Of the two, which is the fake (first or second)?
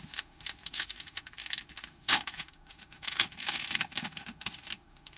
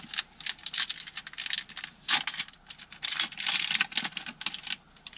first